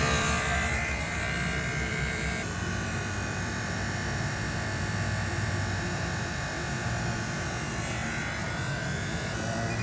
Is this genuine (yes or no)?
no